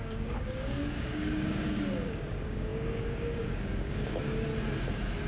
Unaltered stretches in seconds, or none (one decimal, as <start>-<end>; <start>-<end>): 4.5-5.3